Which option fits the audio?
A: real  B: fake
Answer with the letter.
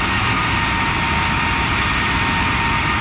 A